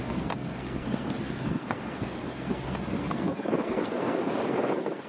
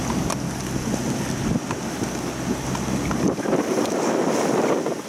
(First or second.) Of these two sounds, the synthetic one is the first